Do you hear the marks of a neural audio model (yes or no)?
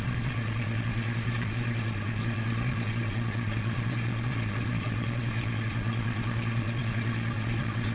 yes